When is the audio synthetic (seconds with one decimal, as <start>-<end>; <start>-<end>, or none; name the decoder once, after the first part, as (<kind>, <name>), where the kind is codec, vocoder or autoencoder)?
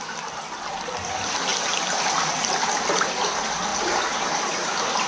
none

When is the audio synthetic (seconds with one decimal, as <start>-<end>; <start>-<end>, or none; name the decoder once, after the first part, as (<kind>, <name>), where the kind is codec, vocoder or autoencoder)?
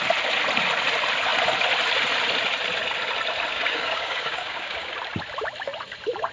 3.5-4.9 (codec, DAC)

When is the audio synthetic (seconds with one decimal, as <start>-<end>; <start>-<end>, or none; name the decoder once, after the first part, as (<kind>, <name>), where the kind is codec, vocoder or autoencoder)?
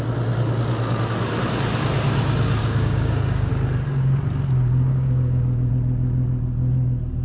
2.6-3.5 (codec, DAC); 4.9-5.7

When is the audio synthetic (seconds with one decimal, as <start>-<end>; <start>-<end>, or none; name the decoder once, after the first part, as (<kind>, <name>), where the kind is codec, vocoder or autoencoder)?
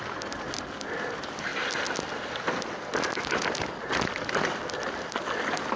none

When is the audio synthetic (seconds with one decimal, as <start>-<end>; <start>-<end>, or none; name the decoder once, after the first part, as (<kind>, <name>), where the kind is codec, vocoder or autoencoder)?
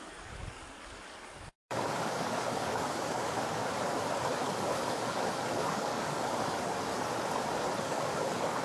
0.0-3.7 (codec, DAC); 4.4-6.9; 7.8-8.6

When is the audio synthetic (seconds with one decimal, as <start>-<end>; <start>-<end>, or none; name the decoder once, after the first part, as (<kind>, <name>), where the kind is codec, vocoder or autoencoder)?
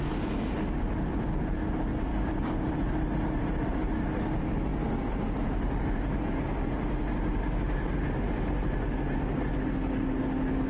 2.1-2.7 (codec, DAC)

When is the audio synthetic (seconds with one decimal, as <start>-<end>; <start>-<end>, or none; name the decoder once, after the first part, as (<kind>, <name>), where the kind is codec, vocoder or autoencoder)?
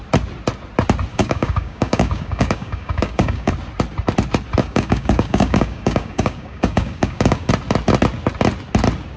1.1-3.5 (codec, DAC); 4.6-7.5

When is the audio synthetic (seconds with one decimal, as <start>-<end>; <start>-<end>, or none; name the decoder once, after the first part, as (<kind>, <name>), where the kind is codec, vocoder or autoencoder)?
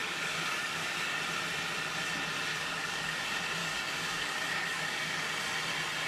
0.0-1.2 (codec, DAC); 2.5-3.2; 3.6-5.2